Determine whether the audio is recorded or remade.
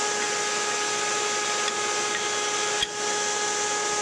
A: recorded